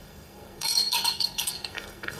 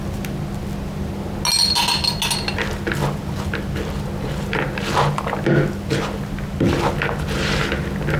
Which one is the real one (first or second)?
second